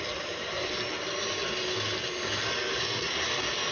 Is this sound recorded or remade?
recorded